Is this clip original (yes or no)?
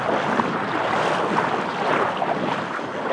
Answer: yes